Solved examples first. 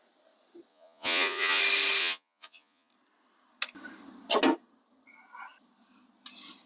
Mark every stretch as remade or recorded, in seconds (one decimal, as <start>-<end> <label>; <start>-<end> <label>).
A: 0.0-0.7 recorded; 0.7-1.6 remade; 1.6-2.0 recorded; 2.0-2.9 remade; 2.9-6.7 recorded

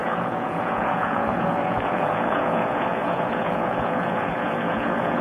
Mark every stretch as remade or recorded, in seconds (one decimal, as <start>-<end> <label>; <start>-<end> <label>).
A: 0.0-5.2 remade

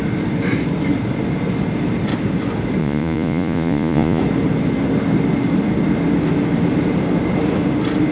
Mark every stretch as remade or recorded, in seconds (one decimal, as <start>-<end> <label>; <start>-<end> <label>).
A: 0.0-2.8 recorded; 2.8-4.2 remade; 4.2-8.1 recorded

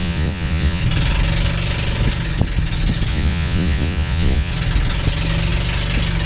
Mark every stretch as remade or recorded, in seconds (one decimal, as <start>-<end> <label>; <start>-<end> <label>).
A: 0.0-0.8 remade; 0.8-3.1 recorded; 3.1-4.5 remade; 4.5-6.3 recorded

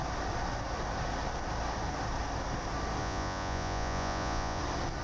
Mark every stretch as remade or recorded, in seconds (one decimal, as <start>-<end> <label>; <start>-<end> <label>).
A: 0.0-3.0 recorded; 3.0-4.6 remade; 4.6-5.0 recorded

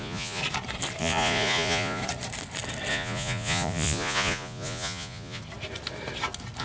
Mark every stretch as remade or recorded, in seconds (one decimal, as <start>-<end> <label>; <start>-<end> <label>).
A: 0.0-0.4 remade; 0.4-1.0 recorded; 1.0-2.0 remade; 2.0-2.9 recorded; 2.9-5.4 remade; 5.4-6.6 recorded

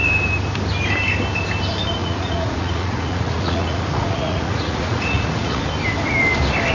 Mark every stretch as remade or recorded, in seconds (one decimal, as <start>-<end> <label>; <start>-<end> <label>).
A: 0.0-2.0 recorded; 2.0-5.6 remade; 5.6-6.7 recorded

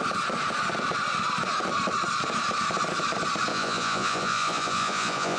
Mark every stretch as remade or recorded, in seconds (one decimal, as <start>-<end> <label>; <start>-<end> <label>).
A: 0.0-3.5 recorded; 3.5-5.4 remade